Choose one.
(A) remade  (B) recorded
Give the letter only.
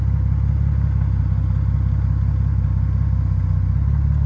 B